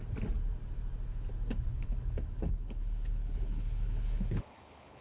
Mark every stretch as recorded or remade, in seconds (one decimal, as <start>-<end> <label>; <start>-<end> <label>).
0.0-1.7 recorded; 1.7-5.0 remade